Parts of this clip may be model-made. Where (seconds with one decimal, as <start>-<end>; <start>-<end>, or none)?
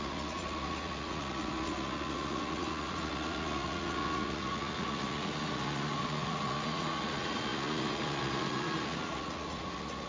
0.0-10.1